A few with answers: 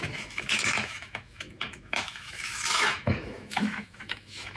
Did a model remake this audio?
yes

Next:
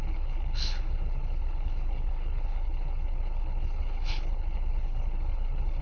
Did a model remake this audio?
yes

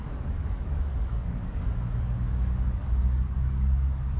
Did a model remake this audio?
yes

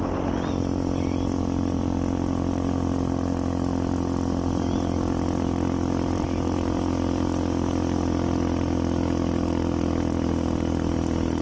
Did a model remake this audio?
no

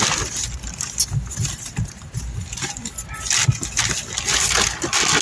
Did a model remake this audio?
no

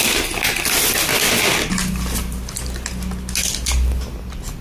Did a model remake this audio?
no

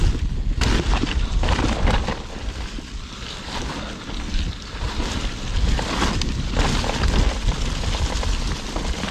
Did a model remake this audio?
no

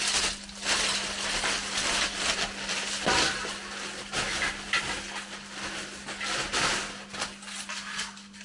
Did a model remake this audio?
no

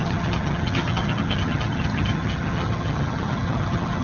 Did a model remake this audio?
yes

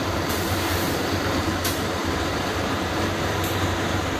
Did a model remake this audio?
yes